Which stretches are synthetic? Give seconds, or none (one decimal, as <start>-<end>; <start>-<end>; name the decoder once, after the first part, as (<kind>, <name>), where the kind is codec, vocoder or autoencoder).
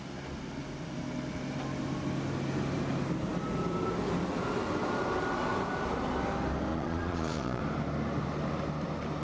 6.7-7.6 (vocoder, Vocos)